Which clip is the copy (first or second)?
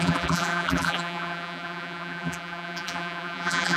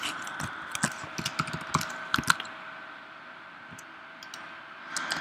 first